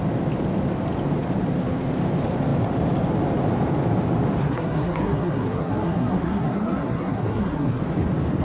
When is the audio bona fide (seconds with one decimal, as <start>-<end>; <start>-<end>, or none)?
0.0-4.4; 7.8-8.4